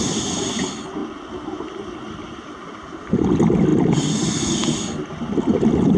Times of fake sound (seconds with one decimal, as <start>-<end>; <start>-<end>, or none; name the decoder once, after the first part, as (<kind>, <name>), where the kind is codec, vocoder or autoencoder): none